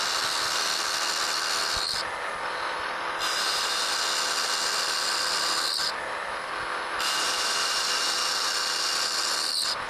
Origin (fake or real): real